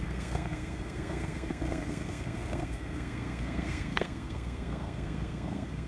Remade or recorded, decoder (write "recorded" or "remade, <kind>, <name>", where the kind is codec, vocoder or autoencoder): remade, codec, SNAC